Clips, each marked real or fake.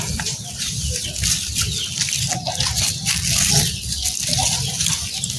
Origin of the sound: real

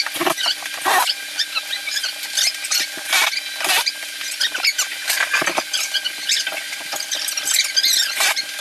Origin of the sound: real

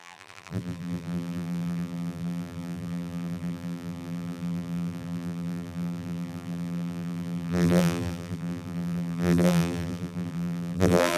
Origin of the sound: fake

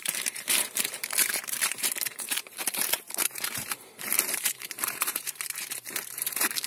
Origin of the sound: fake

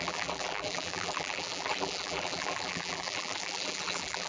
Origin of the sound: fake